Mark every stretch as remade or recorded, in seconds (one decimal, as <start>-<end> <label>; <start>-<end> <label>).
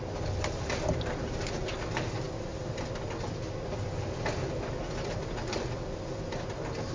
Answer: 0.0-6.9 recorded